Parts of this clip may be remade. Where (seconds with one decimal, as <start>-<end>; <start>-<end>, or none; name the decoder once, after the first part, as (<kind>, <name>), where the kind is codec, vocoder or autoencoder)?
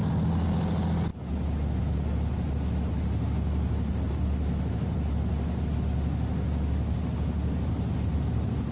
none